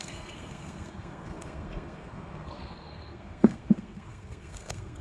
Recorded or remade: remade